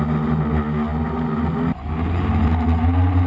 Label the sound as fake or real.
real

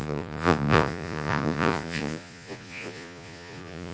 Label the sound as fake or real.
fake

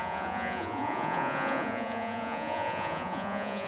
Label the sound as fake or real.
fake